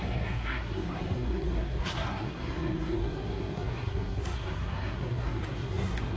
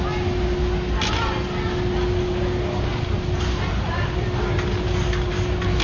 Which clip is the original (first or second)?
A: second